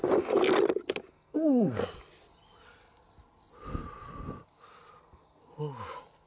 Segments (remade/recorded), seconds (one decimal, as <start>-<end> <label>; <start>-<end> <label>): 0.0-1.1 recorded; 1.1-1.8 remade; 1.8-5.0 recorded; 5.0-5.4 remade; 5.4-6.3 recorded